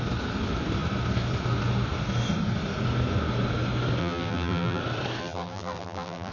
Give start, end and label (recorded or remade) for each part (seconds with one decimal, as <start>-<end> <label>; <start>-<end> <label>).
0.0-4.0 recorded; 4.0-4.8 remade; 4.8-5.2 recorded; 5.2-6.3 remade